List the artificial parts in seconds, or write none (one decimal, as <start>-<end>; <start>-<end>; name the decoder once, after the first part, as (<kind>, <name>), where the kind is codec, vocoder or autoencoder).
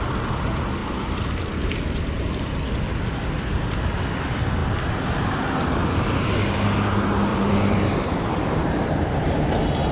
7.3-9.3 (vocoder, BigVGAN v2)